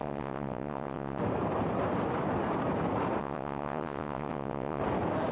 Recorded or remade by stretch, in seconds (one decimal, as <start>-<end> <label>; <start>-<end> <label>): 0.0-1.2 remade; 1.2-3.2 recorded; 3.2-4.8 remade; 4.8-5.3 recorded